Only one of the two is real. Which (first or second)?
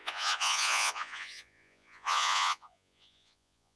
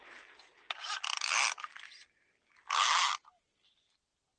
second